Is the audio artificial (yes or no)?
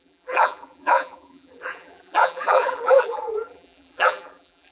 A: yes